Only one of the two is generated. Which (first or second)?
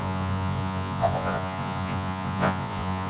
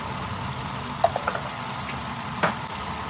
first